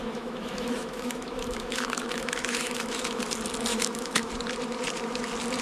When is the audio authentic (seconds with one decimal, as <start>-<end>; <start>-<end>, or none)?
3.2-3.7; 4.3-5.6